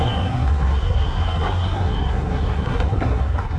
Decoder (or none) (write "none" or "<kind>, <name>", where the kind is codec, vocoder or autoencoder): codec, SNAC